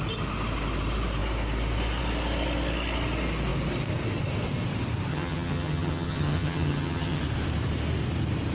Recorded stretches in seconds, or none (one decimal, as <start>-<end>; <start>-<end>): 0.0-5.1; 7.2-8.5